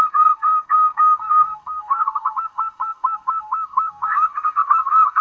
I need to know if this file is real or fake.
fake